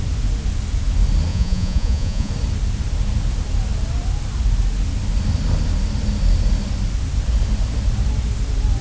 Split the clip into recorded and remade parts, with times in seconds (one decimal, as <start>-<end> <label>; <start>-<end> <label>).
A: 0.0-1.3 recorded; 1.3-2.3 remade; 2.3-8.8 recorded